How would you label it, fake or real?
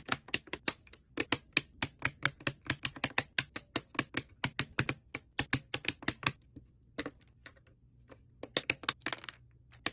real